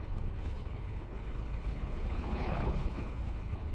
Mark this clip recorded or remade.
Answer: remade